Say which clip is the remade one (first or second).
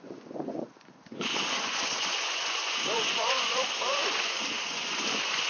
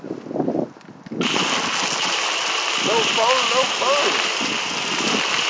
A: first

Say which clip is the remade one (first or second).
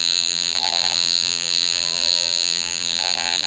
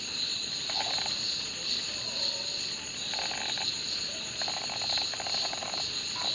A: first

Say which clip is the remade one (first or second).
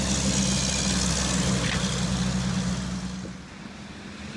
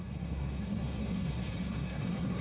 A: second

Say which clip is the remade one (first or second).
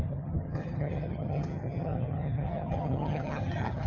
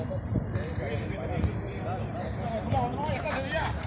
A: first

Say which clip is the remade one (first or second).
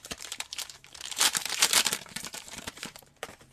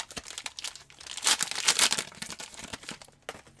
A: first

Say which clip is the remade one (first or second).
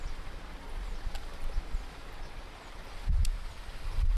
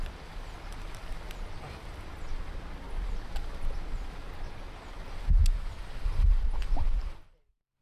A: first